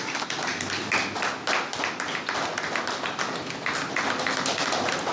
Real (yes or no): yes